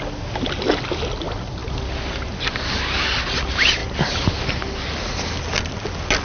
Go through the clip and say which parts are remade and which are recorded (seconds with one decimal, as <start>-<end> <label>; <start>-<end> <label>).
0.0-6.2 recorded

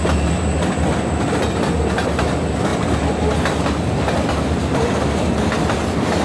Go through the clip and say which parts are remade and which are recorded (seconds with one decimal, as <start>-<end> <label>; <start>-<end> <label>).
0.0-6.2 recorded

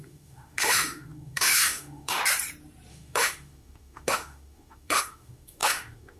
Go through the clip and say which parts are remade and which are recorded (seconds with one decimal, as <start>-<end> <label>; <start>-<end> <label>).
0.0-2.2 remade; 2.2-2.9 recorded; 2.9-6.2 remade

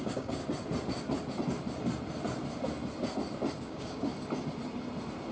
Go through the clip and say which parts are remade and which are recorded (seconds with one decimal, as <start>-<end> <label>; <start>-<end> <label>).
0.0-0.4 remade; 0.4-3.6 recorded; 3.6-4.1 remade; 4.1-5.3 recorded

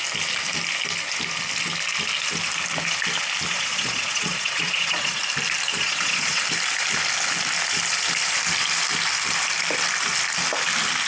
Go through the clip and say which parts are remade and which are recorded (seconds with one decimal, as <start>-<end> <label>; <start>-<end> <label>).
0.0-3.5 recorded; 3.5-5.2 remade; 5.2-5.7 recorded; 5.7-6.4 remade; 6.4-11.1 recorded

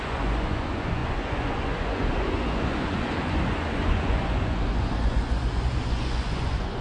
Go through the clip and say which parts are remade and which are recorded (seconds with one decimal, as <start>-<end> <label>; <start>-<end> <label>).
0.0-6.8 remade